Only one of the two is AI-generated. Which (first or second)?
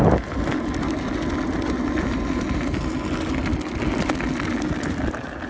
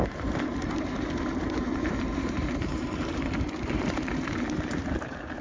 second